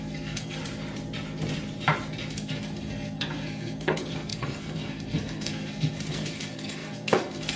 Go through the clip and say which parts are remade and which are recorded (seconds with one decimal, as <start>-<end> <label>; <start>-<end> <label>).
0.0-0.6 remade; 0.6-2.3 recorded; 2.3-7.6 remade